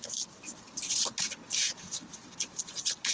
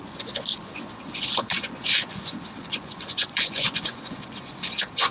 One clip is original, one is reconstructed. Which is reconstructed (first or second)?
second